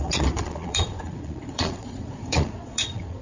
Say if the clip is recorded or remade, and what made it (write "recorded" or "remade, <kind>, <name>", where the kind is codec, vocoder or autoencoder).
remade, vocoder, Vocos